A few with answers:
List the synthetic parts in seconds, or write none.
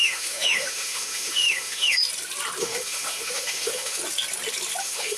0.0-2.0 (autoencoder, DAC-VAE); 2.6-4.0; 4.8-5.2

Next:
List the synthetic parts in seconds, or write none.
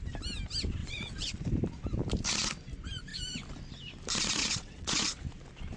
0.8-1.3 (vocoder, WaveNeXt); 4.4-5.2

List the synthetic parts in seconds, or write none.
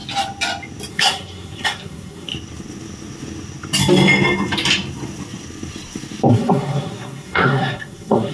0.9-2.3 (codec, SNAC); 6.3-8.3